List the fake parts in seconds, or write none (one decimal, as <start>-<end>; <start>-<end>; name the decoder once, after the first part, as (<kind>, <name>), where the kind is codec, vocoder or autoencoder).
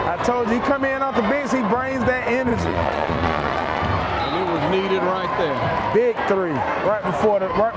2.5-3.8 (vocoder, Vocos)